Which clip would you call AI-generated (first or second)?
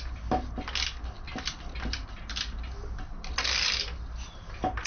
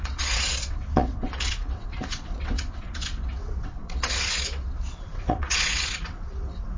second